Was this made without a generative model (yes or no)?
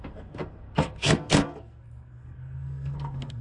no